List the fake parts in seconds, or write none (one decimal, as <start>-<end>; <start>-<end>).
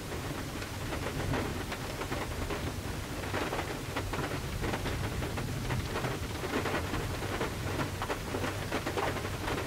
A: none